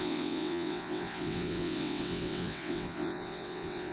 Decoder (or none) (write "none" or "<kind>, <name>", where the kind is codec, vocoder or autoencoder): vocoder, WaveNeXt